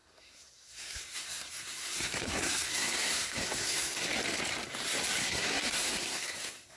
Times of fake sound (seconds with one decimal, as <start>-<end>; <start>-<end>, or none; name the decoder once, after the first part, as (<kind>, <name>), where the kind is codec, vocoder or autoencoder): 0.0-4.1 (codec, SNAC); 5.2-6.8